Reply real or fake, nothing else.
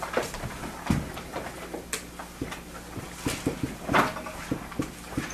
real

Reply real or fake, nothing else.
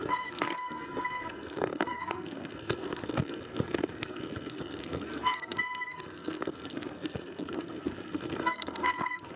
fake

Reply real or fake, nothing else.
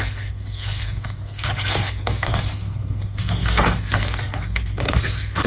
fake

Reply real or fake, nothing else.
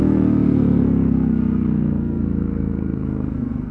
fake